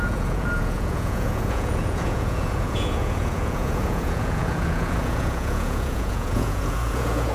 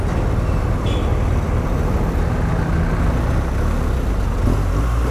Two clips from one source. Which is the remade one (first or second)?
first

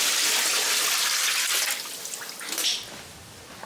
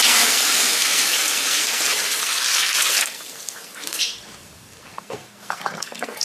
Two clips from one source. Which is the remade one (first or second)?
second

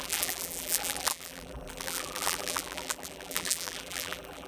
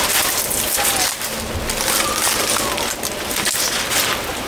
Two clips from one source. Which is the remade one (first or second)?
first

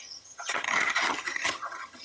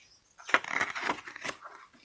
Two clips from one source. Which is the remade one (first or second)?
first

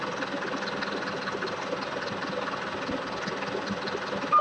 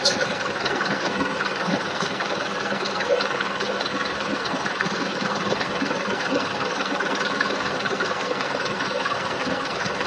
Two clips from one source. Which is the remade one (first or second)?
second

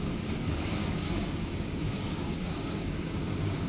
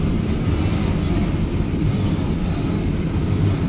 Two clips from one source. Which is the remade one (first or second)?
first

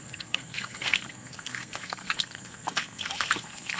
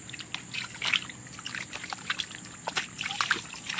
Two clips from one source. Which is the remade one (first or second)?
first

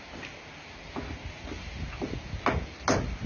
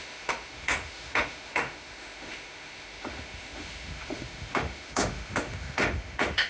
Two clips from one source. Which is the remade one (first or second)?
second